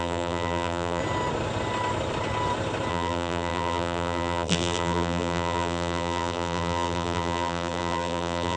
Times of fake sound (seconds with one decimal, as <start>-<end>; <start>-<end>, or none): 0.0-1.0; 2.9-8.6